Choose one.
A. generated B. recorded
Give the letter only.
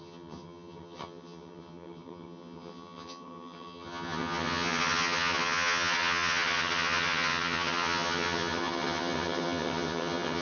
A